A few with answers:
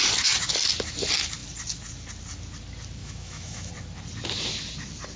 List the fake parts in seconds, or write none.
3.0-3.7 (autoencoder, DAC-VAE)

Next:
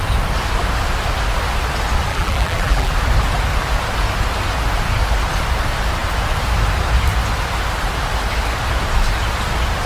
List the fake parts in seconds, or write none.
2.1-2.9 (vocoder, BigVGAN v2)

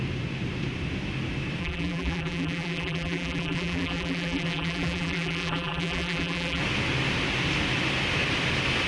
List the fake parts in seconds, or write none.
1.6-6.6 (vocoder, BigVGAN v2)

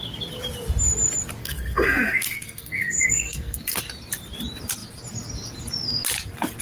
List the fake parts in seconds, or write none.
1.4-3.8 (codec, SNAC)

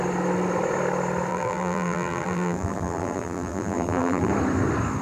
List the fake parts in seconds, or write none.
1.3-4.3 (vocoder, BigVGAN v2)